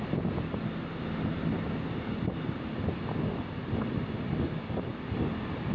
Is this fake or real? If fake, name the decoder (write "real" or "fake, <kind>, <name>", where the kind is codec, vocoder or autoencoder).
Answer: real